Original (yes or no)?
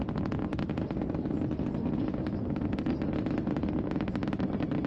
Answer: yes